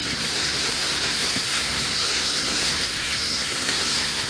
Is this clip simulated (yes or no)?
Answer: yes